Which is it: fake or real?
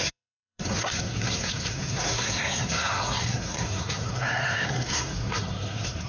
fake